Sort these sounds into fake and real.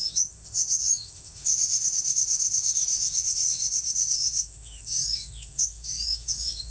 fake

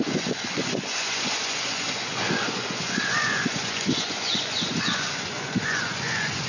fake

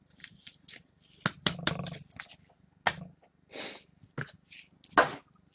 real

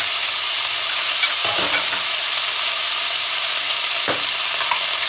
real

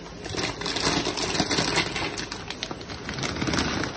real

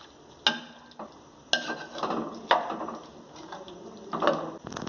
real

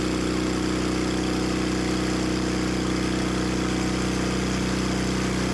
real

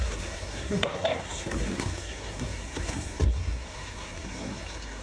fake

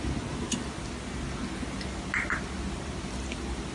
real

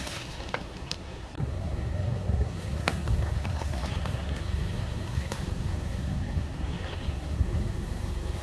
fake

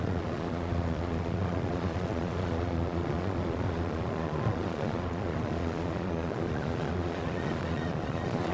fake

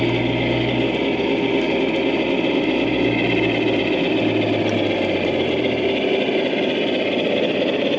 real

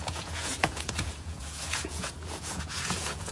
fake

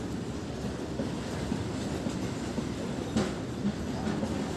real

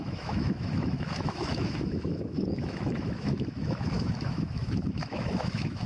fake